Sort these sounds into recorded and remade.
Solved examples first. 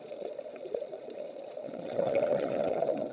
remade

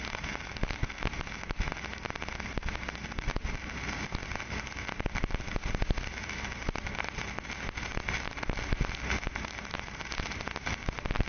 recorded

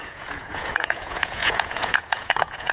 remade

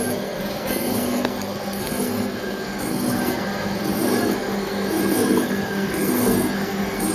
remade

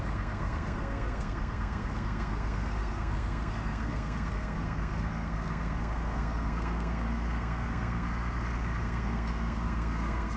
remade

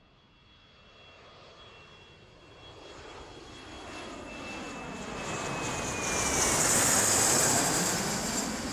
recorded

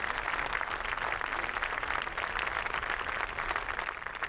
recorded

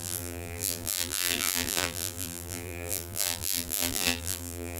remade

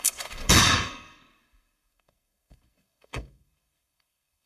remade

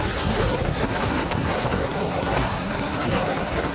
remade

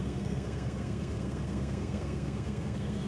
remade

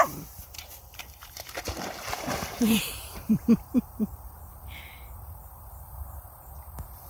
remade